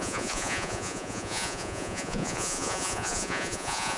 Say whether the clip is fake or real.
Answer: fake